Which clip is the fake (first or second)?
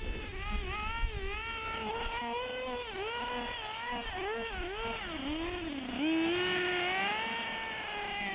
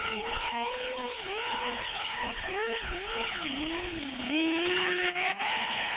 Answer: second